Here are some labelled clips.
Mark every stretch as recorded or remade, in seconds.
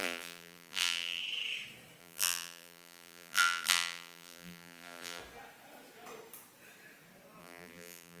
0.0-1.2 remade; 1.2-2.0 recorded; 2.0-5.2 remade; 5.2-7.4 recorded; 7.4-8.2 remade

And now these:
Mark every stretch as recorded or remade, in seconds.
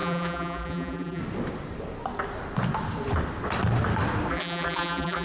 0.0-1.2 remade; 1.2-4.3 recorded; 4.3-5.2 remade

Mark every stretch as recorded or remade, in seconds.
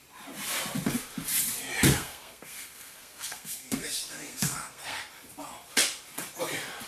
0.0-1.9 recorded; 1.9-5.1 remade; 5.1-6.9 recorded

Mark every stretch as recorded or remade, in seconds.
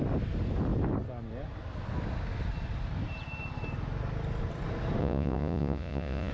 0.0-5.0 recorded; 5.0-6.3 remade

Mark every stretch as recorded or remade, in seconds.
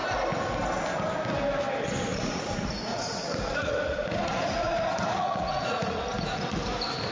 0.0-2.1 recorded; 2.1-6.0 remade; 6.0-7.1 recorded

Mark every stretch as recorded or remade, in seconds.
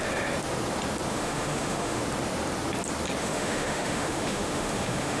0.0-1.1 recorded; 1.1-2.0 remade; 2.0-3.2 recorded; 3.2-5.2 remade